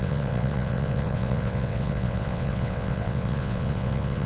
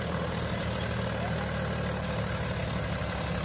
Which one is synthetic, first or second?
first